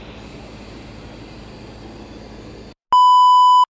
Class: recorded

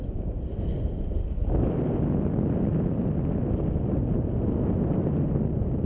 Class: recorded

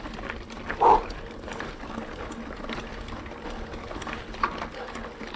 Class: recorded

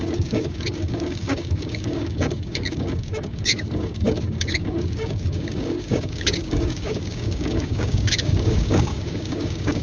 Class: remade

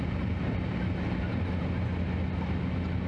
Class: recorded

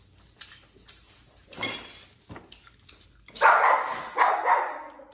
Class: recorded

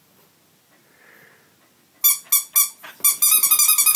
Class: recorded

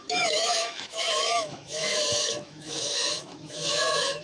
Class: remade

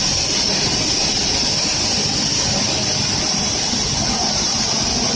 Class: recorded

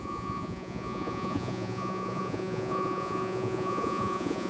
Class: remade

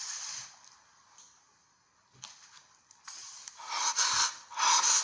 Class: recorded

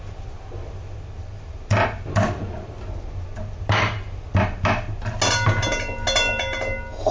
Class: recorded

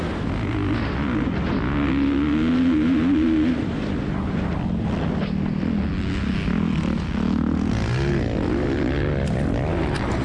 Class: recorded